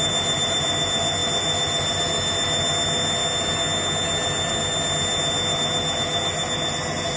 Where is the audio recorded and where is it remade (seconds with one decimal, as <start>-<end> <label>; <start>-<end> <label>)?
0.0-7.2 recorded